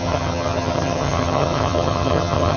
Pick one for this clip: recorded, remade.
remade